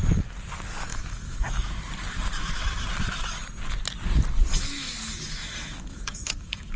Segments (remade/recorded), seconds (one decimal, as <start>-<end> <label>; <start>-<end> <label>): 0.0-0.9 recorded; 0.9-1.5 remade; 1.5-4.5 recorded; 4.5-6.8 remade